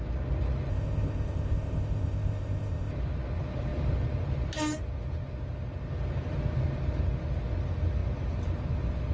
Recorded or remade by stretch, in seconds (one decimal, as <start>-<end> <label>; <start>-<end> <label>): 0.0-0.7 recorded; 0.7-2.9 remade; 2.9-9.1 recorded